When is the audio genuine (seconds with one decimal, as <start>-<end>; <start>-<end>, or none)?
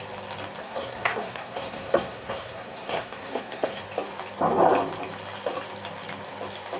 0.0-0.6; 3.8-6.8